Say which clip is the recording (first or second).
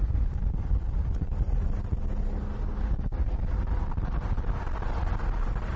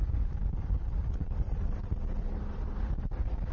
first